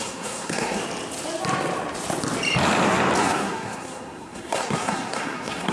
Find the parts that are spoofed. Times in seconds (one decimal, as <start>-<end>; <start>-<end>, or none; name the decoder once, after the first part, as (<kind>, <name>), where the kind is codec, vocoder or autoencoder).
0.0-0.8 (codec, SNAC); 3.2-5.7